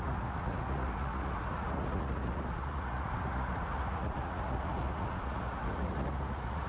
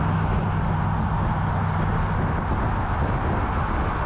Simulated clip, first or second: first